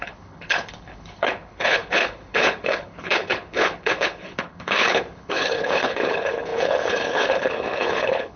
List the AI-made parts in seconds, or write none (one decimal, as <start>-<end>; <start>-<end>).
0.0-8.4